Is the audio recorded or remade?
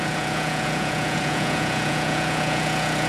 remade